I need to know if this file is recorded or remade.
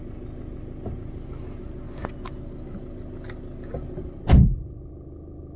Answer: recorded